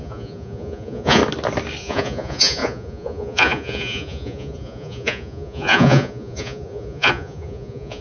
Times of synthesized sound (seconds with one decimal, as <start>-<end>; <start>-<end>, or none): 0.0-1.2; 1.8-8.0